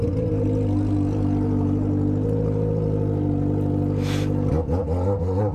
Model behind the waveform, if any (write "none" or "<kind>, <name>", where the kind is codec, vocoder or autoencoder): none